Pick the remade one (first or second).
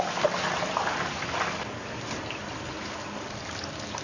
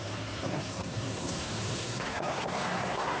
second